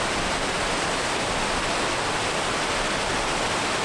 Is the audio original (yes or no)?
yes